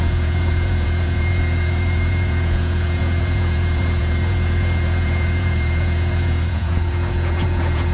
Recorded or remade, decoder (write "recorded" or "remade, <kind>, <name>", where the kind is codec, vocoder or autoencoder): remade, vocoder, Vocos